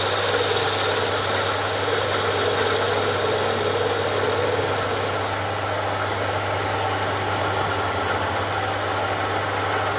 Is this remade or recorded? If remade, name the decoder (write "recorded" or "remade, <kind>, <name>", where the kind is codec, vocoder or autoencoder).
recorded